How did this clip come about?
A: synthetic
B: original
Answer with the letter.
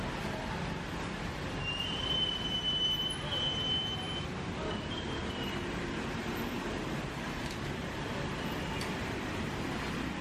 B